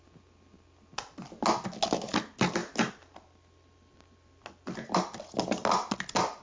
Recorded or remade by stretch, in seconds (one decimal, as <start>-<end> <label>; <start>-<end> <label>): 0.0-6.4 recorded